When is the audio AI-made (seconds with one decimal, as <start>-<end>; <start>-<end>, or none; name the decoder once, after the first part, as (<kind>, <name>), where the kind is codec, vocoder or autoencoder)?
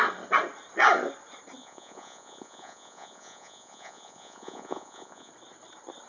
1.6-5.3 (vocoder, Vocos)